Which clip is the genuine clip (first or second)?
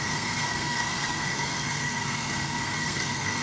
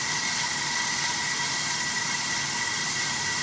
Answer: second